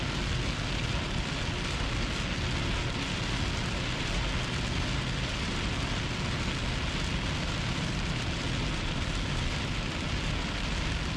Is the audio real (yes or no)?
yes